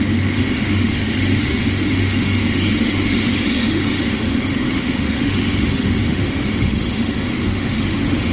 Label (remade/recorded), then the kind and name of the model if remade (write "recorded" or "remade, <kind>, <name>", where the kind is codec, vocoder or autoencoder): remade, autoencoder, DAC-VAE